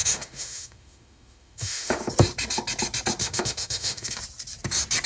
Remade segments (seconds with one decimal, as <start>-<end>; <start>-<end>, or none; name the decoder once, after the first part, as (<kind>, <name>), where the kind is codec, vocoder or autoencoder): 0.0-2.1 (autoencoder, DAC-VAE); 3.2-4.2